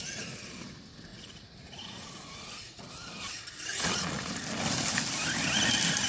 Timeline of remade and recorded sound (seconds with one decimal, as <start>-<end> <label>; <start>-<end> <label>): 0.0-1.1 recorded; 1.1-2.9 remade; 2.9-3.7 recorded; 3.7-4.3 remade; 4.3-6.1 recorded